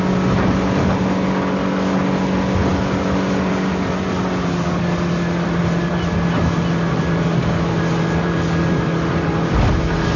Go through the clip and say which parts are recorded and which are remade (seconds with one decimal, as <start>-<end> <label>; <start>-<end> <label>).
0.0-10.2 recorded